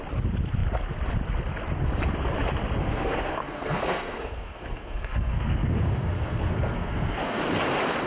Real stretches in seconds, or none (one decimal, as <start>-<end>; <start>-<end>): 0.0-2.8; 7.4-8.1